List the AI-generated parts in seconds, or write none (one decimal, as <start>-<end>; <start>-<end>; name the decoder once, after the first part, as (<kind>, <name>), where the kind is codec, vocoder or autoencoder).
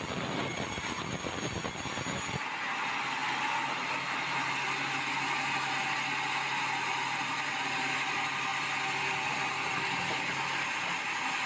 none